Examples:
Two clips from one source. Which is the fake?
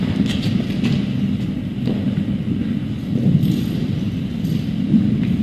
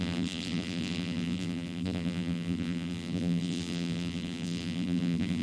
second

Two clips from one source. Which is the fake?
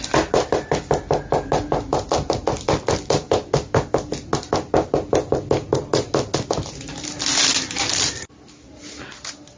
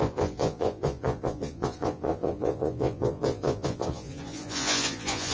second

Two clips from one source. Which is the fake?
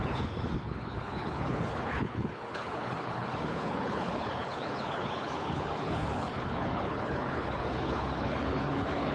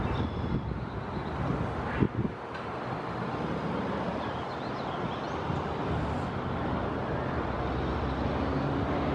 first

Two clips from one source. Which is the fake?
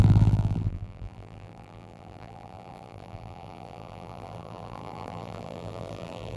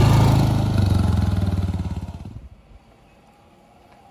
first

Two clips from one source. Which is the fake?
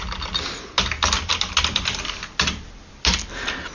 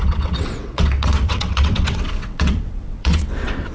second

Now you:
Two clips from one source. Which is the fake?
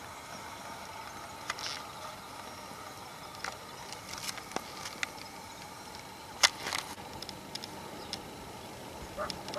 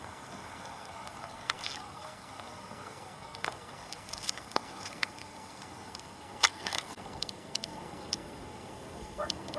second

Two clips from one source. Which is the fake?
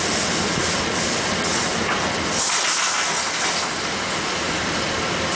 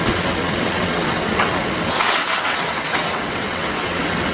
second